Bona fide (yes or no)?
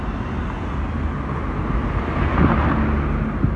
yes